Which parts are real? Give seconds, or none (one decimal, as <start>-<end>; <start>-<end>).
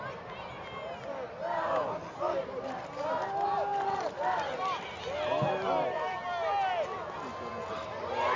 0.0-8.4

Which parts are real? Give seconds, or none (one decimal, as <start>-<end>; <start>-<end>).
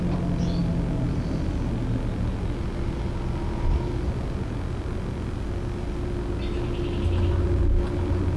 0.0-8.4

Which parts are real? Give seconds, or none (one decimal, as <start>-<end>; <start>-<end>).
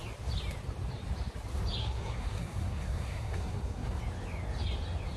0.0-1.8; 4.0-5.2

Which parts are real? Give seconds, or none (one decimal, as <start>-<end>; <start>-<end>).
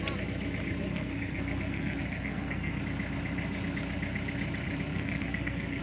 0.0-0.9; 2.8-4.9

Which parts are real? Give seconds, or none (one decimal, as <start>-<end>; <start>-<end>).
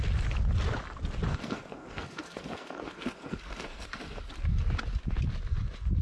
0.0-1.3; 4.3-6.0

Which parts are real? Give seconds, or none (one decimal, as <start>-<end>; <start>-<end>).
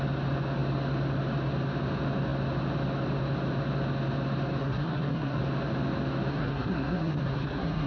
0.0-4.6; 5.4-6.3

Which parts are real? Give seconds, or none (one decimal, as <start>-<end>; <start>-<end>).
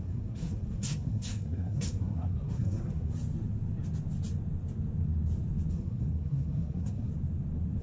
3.1-5.7; 7.1-7.8